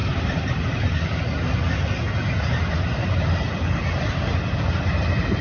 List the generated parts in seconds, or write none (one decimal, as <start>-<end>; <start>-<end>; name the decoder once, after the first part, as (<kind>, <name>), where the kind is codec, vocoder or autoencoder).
0.0-1.2 (vocoder, BigVGAN v2)